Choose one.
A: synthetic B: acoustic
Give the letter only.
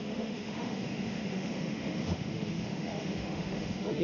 A